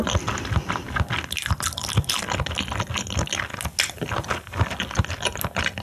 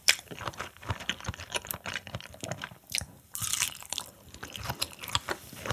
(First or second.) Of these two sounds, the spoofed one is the second